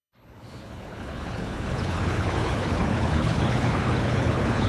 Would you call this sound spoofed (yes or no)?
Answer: yes